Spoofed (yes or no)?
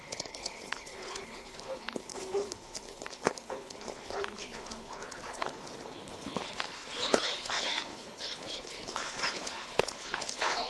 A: yes